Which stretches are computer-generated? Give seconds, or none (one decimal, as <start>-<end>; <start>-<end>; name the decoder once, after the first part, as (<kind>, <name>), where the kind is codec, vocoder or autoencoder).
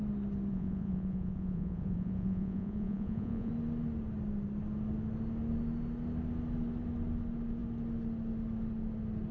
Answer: 0.5-3.5 (vocoder, Vocos)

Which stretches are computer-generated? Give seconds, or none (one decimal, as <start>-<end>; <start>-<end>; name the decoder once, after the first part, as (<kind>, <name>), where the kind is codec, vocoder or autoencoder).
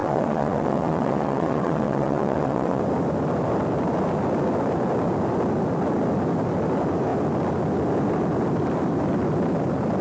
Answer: 0.0-2.8 (vocoder, WaveNeXt)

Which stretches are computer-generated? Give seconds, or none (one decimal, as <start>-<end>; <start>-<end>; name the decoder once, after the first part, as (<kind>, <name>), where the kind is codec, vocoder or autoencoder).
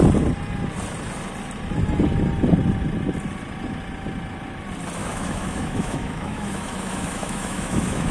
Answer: 5.0-8.1 (autoencoder, DAC-VAE)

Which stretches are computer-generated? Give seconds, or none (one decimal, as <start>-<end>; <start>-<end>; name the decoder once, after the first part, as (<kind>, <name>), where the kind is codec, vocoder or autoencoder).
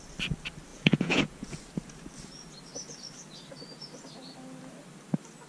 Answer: 0.7-1.6 (vocoder, Vocos)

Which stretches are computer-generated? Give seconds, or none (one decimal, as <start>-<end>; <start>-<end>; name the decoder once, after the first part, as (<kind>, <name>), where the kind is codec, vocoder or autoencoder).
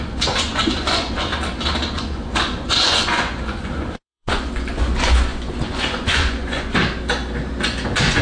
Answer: 0.0-1.3 (vocoder, Vocos); 1.9-6.8; 7.6-8.2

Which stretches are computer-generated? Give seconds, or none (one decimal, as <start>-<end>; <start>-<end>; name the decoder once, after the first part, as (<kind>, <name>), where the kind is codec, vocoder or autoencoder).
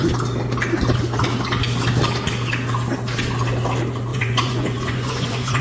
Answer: 4.1-5.6 (vocoder, Vocos)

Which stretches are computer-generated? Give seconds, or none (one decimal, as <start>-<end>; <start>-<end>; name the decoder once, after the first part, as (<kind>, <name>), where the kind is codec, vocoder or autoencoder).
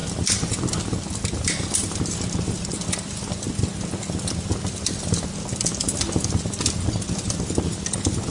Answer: none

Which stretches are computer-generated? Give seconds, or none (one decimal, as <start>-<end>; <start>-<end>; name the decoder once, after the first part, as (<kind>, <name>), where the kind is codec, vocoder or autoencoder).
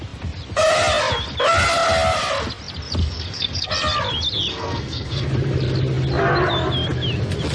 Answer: 3.0-3.7 (codec, SNAC); 4.5-5.3